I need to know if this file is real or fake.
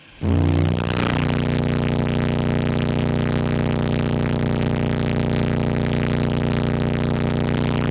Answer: real